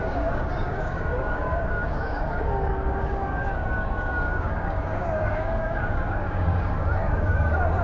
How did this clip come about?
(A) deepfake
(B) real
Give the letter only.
A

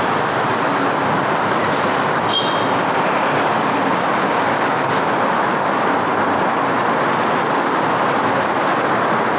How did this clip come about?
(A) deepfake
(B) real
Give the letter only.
B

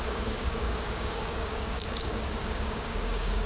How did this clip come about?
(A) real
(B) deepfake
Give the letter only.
B